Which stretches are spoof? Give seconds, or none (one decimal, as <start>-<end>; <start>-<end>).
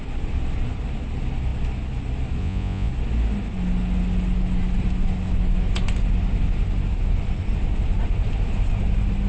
2.4-2.9